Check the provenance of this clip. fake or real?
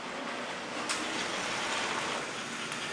real